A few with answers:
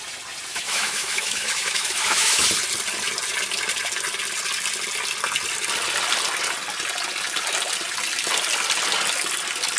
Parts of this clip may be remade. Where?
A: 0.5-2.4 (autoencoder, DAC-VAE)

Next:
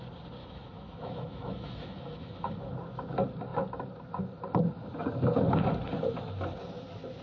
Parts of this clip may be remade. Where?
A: 0.4-2.7 (autoencoder, DAC-VAE)

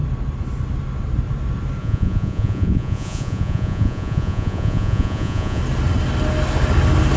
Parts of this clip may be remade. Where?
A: 1.8-5.6 (vocoder, Vocos)

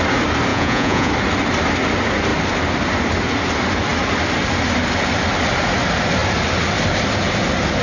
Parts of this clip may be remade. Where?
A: 0.5-1.1 (vocoder, Vocos)

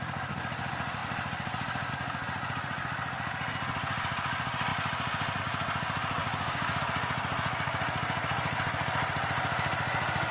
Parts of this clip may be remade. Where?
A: 6.2-6.8 (codec, DAC)

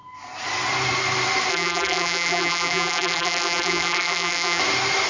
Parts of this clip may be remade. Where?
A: 1.5-4.6 (vocoder, BigVGAN v2)